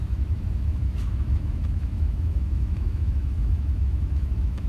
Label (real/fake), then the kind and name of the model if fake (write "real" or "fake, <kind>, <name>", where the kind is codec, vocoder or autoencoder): fake, autoencoder, DAC-VAE